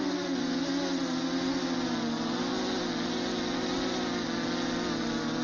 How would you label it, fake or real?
real